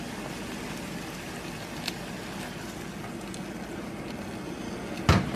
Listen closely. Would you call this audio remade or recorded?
recorded